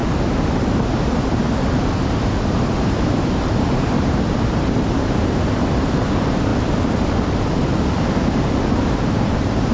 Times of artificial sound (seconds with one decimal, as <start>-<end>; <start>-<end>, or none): 2.5-6.5; 8.7-9.7